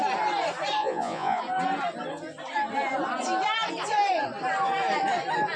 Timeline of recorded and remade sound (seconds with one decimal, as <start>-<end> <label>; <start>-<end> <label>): 0.0-0.8 recorded; 0.8-1.4 remade; 1.4-5.6 recorded